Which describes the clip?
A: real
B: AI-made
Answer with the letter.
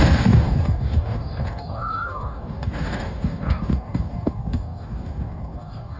B